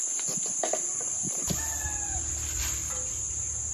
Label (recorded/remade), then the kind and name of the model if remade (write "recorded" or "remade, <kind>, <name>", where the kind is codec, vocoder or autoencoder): recorded